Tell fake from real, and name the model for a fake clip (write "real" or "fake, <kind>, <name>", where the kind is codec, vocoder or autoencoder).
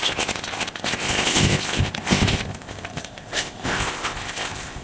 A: fake, codec, ZipCodec